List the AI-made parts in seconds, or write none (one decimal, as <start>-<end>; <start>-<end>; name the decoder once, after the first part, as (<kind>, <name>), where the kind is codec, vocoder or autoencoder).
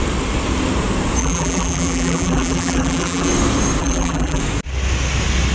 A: 1.2-3.3 (vocoder, BigVGAN v2); 3.8-4.4